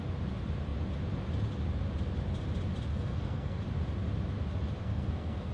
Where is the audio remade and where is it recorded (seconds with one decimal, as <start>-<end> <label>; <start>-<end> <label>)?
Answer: 0.0-2.9 recorded; 2.9-3.6 remade; 3.6-4.8 recorded; 4.8-5.5 remade